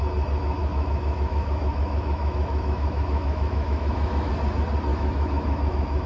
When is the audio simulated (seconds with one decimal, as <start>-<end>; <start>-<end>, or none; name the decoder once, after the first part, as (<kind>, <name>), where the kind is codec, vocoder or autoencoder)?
0.6-4.3 (autoencoder, DAC-VAE); 4.9-6.1